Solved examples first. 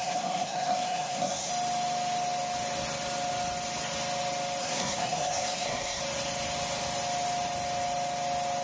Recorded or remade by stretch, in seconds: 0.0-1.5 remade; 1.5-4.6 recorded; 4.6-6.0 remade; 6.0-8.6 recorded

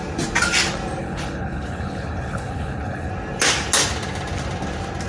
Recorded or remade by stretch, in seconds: 0.0-1.0 recorded; 1.0-3.1 remade; 3.1-5.1 recorded

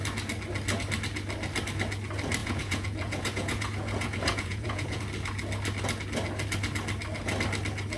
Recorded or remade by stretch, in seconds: 0.0-2.4 recorded; 2.4-5.0 remade; 5.0-8.0 recorded